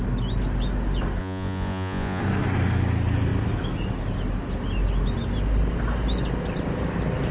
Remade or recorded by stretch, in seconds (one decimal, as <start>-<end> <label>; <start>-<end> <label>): 0.0-1.2 recorded; 1.2-2.2 remade; 2.2-7.3 recorded